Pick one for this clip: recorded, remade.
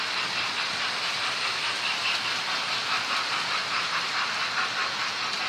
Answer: recorded